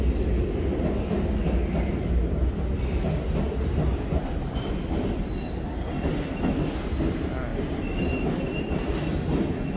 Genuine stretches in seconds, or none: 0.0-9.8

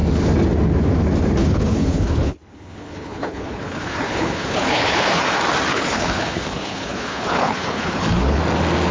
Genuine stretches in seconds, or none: 0.0-1.4; 5.2-5.7; 8.4-8.9

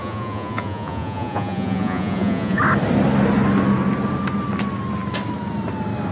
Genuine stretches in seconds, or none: 2.6-6.1